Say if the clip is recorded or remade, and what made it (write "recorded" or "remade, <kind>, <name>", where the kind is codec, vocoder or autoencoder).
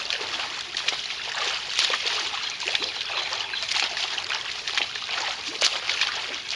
remade, vocoder, BigVGAN v2